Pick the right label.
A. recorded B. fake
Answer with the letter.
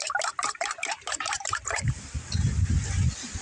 A